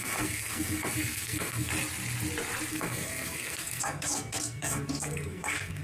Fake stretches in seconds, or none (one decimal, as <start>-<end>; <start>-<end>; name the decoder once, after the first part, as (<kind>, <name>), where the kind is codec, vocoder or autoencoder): 0.0-1.7 (codec, SNAC); 2.7-5.8

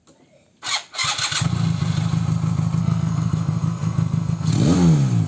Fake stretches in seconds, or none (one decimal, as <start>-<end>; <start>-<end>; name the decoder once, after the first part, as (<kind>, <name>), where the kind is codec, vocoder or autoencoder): 2.8-4.5 (codec, SNAC)